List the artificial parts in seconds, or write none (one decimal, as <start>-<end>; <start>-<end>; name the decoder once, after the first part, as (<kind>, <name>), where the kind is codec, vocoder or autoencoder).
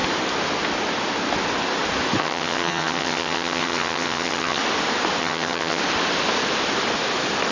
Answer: 2.2-4.6 (vocoder, HiFi-GAN); 5.2-5.8